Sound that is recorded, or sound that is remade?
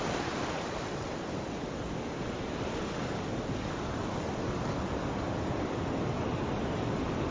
recorded